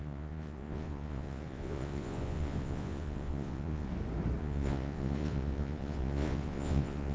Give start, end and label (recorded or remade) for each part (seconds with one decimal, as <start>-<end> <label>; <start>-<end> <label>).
0.0-3.9 remade; 3.9-4.4 recorded; 4.4-7.1 remade